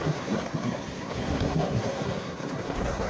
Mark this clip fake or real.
fake